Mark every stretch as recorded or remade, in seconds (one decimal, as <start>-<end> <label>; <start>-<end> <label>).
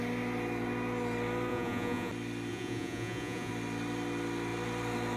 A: 0.0-1.5 recorded; 1.5-2.1 remade; 2.1-2.5 recorded; 2.5-3.5 remade; 3.5-5.2 recorded